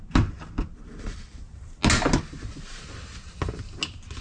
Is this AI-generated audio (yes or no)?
no